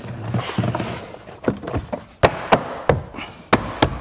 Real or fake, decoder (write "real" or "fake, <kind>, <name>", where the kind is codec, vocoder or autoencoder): real